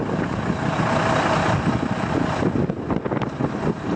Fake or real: real